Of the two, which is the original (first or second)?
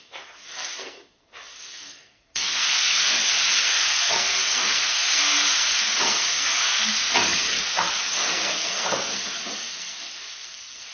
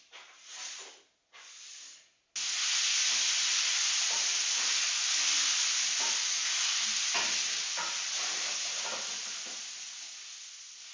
second